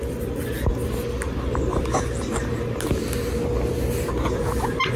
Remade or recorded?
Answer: recorded